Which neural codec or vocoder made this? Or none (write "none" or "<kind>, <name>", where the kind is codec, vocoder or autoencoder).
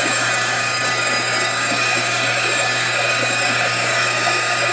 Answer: codec, DAC